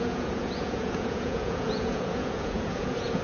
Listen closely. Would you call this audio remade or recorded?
remade